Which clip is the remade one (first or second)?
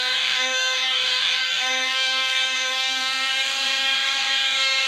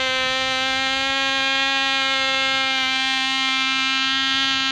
first